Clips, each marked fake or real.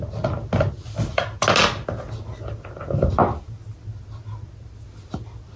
real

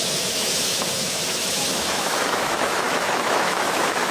fake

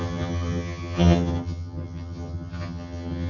fake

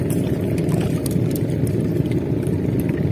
real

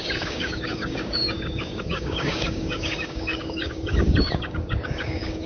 fake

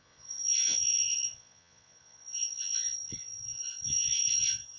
fake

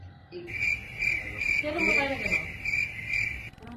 real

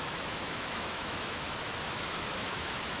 fake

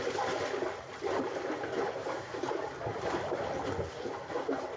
real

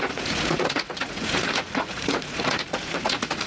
fake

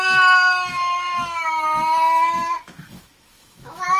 fake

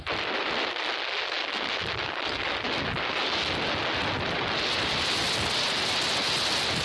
real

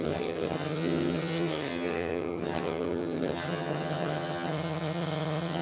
fake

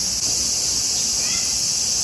real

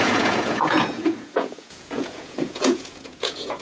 fake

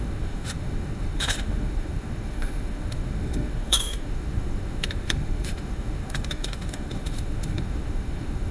fake